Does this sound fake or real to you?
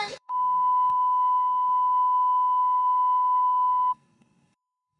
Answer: fake